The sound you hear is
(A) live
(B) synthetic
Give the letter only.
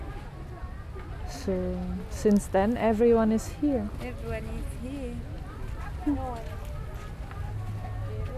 A